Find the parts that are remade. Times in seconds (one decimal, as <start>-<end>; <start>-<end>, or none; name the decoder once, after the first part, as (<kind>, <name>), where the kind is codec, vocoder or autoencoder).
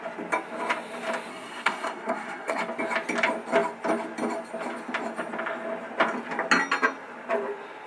1.3-2.6 (codec, SNAC)